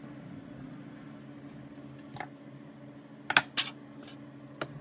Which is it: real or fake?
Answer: real